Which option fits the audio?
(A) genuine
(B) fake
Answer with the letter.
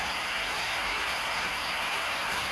B